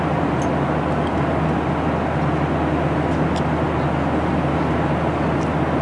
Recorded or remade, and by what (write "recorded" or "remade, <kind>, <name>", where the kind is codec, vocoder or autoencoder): recorded